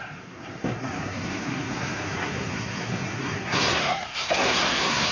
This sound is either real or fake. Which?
fake